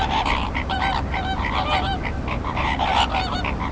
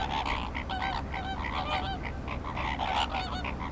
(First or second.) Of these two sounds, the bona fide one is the second